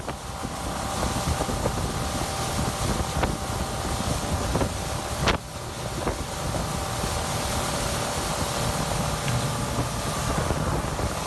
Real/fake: real